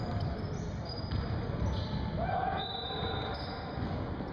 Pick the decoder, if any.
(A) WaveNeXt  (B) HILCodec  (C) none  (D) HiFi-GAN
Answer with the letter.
C